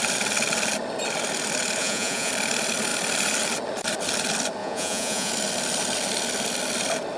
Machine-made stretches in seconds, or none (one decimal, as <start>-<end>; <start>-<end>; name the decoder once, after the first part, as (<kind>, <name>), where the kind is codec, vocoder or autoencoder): 1.8-2.3 (vocoder, Vocos); 4.6-5.3